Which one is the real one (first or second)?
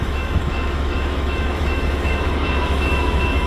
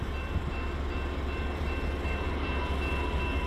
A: second